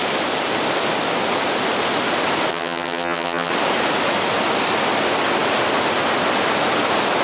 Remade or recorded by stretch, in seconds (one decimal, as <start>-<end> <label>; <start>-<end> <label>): 0.0-2.5 recorded; 2.5-3.5 remade; 3.5-7.2 recorded